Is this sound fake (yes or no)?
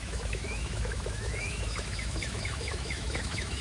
yes